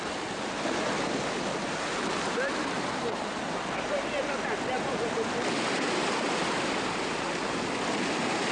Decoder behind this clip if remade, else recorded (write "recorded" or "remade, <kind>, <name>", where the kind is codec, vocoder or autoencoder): recorded